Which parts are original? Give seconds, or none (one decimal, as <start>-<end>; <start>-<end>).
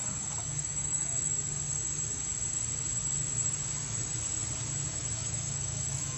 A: 0.0-0.6; 1.3-4.9